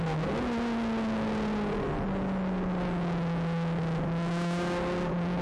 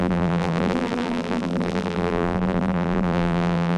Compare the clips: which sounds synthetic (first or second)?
second